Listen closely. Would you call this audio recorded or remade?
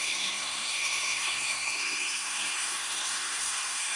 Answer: remade